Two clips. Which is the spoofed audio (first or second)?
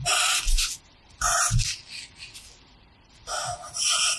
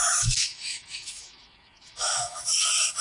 second